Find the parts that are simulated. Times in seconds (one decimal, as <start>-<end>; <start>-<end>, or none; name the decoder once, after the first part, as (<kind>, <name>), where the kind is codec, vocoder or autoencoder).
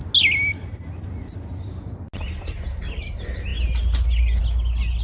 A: none